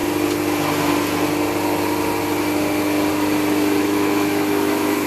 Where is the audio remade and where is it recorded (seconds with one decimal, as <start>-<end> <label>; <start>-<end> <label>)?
0.0-3.8 recorded; 3.8-5.1 remade